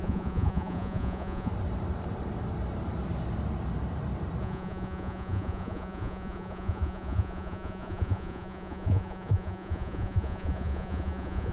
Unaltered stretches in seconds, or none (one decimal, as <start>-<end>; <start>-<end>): 1.5-4.4